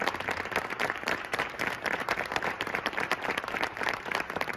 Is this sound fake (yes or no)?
yes